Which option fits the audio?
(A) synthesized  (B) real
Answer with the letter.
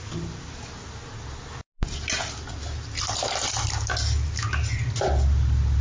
B